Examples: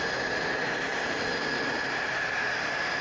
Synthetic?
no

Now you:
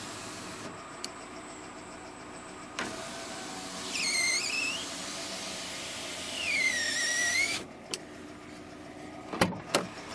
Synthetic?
yes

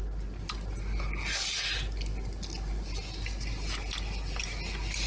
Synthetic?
no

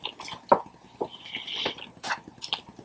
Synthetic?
no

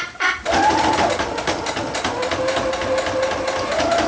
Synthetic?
no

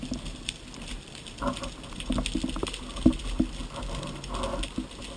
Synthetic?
no